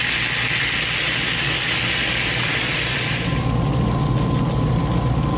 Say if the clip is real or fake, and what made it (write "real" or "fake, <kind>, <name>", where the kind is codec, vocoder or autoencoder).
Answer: real